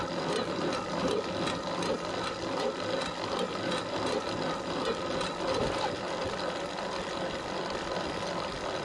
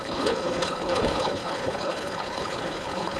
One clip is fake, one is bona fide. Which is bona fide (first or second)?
first